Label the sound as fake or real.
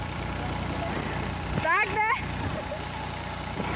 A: real